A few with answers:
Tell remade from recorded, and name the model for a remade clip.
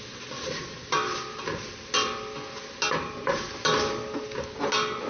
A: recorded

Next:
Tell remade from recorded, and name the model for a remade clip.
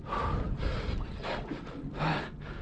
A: recorded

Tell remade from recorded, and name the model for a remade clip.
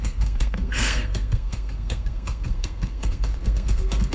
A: remade, codec, SNAC